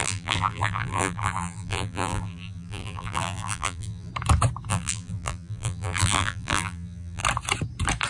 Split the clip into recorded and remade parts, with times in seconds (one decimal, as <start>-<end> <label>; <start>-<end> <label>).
0.0-4.1 remade; 4.1-4.7 recorded; 4.7-7.2 remade; 7.2-8.1 recorded